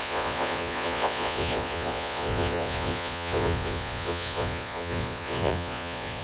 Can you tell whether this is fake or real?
fake